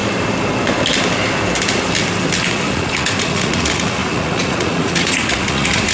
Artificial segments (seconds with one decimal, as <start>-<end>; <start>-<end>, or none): 2.5-5.9

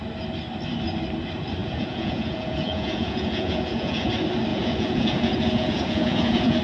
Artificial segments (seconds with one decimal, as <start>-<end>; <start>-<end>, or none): 1.6-4.1; 4.5-6.6

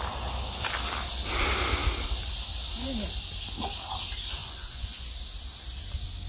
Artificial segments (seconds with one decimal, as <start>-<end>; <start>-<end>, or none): 4.4-5.1